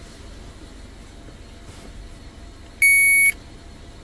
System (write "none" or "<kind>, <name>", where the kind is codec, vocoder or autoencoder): none